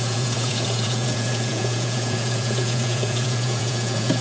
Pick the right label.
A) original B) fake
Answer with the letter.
B